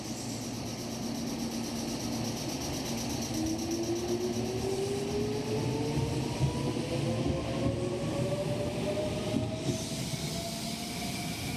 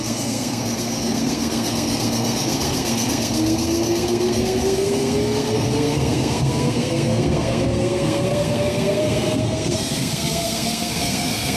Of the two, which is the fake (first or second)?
second